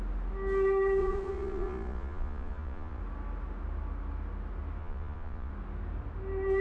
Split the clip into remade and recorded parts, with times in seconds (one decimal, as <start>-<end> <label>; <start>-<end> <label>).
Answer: 0.0-1.0 recorded; 1.0-3.0 remade; 3.0-4.8 recorded; 4.8-5.5 remade; 5.5-6.6 recorded